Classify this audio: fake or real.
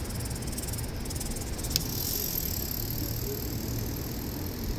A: real